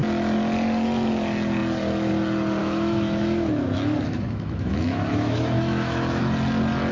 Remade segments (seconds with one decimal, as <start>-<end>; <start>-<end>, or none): 2.6-6.2